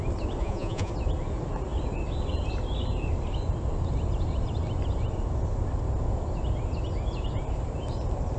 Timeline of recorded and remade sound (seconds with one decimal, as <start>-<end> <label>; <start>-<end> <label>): 0.0-0.4 recorded; 0.4-0.9 remade; 0.9-8.4 recorded

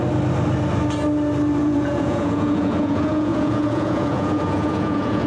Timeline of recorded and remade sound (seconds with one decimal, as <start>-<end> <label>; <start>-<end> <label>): 0.0-1.6 recorded; 1.6-5.3 remade

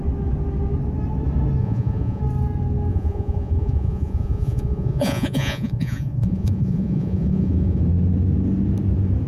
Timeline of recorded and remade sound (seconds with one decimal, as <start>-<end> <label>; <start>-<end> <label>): 0.0-1.6 recorded; 1.6-2.2 remade; 2.2-2.9 recorded; 2.9-7.8 remade; 7.8-9.3 recorded

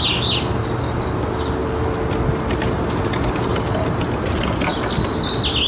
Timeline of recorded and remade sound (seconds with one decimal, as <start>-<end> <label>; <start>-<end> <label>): 0.0-5.7 recorded

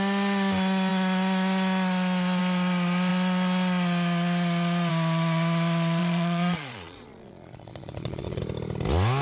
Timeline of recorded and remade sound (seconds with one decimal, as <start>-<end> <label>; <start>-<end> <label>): 0.0-6.0 recorded; 6.0-8.4 remade; 8.4-9.2 recorded

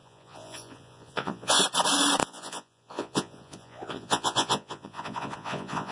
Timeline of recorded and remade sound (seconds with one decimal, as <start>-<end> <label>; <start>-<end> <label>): 0.0-1.6 remade; 1.6-2.2 recorded; 2.2-5.9 remade